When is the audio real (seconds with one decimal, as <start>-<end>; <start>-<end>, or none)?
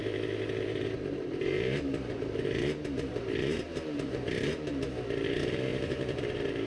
none